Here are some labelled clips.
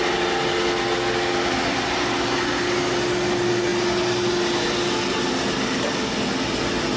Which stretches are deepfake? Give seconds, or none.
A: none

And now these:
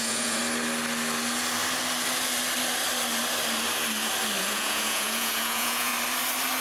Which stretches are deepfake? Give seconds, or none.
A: 0.0-0.4 (vocoder, Vocos); 4.4-5.9